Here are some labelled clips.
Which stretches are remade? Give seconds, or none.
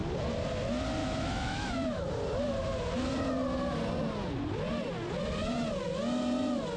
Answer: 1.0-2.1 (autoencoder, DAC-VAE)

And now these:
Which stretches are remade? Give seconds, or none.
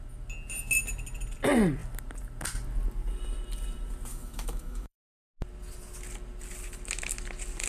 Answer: 4.1-5.2 (autoencoder, DAC-VAE)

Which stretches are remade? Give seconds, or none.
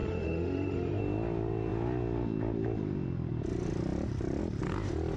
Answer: 0.0-1.0 (autoencoder, DAC-VAE)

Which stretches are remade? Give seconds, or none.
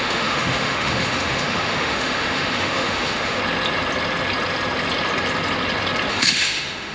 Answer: 0.0-3.4 (autoencoder, DAC-VAE); 6.1-6.9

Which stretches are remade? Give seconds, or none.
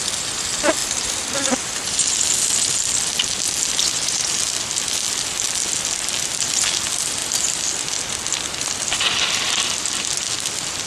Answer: none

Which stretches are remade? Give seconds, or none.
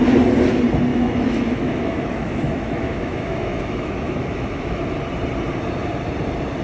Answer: 0.9-4.8 (autoencoder, DAC-VAE)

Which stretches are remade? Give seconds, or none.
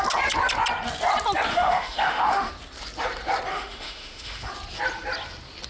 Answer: 1.5-2.5 (autoencoder, DAC-VAE); 3.5-4.5